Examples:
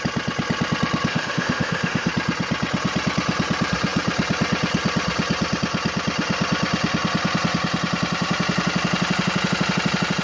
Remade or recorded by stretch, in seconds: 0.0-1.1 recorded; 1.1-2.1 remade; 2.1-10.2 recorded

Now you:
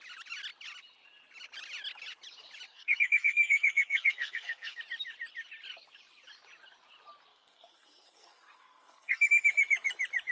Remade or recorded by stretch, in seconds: 0.0-2.7 recorded; 2.7-4.8 remade; 4.8-7.3 recorded; 7.3-9.3 remade; 9.3-10.3 recorded